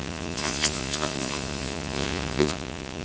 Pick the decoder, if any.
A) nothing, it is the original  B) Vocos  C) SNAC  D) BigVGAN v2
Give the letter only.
B